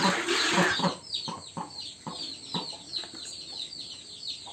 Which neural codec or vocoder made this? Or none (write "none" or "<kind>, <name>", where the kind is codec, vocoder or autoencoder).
none